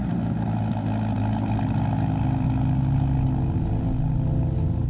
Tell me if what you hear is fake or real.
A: real